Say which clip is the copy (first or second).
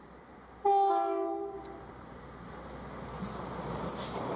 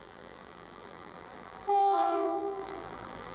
second